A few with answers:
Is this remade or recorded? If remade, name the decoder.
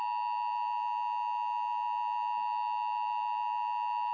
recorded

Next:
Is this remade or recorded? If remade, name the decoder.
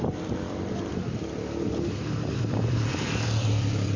remade, vocoder, BigVGAN v2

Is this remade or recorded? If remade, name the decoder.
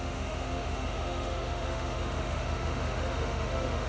remade, autoencoder, DAC-VAE